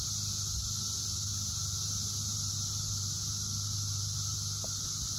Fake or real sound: real